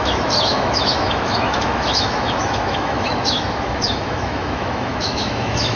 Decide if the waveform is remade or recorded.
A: remade